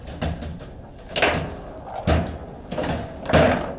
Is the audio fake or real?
real